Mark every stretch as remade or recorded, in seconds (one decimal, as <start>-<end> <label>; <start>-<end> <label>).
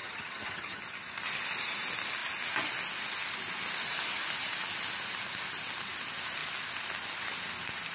0.0-0.8 remade; 0.8-7.9 recorded